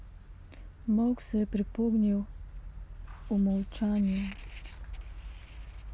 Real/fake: real